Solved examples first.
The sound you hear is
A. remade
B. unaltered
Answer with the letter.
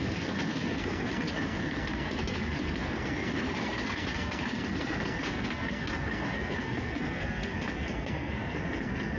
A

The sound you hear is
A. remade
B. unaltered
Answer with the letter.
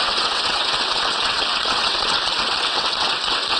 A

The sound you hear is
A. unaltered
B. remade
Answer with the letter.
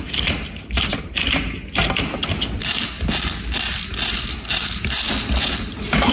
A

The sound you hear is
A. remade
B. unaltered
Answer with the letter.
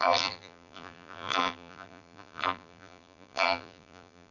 A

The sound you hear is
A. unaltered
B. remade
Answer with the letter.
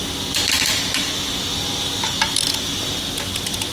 A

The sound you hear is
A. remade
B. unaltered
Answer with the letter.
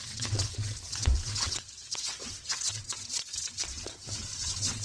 A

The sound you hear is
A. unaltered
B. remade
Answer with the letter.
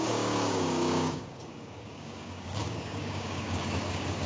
B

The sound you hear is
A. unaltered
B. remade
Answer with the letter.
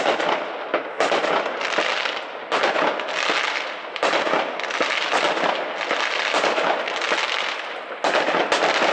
A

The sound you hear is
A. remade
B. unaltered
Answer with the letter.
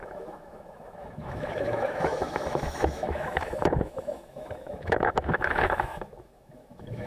A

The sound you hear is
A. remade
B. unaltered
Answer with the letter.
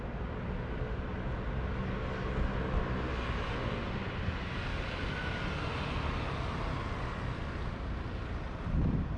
B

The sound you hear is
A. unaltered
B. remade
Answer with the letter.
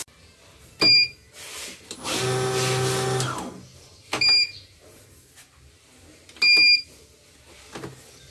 A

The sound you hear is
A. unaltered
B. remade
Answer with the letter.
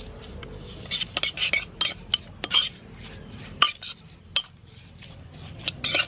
A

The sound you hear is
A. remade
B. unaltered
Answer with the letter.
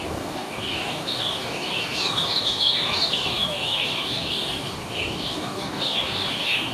A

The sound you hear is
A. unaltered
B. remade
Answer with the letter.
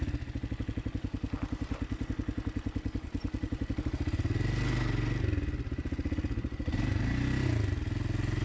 A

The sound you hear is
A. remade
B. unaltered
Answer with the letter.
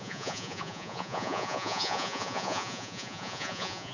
A